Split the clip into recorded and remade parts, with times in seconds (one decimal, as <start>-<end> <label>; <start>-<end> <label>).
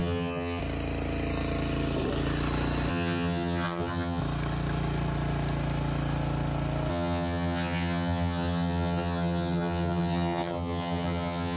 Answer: 0.0-0.6 remade; 0.6-2.9 recorded; 2.9-4.2 remade; 4.2-6.9 recorded; 6.9-11.6 remade